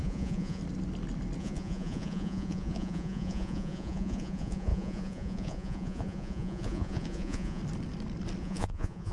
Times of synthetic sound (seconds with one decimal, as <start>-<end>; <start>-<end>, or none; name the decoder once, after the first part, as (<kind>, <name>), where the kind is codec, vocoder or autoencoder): 0.0-0.6 (vocoder, Vocos); 1.4-7.6; 8.4-9.1